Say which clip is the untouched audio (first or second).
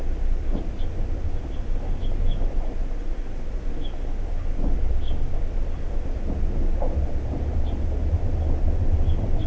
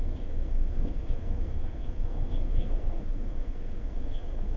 first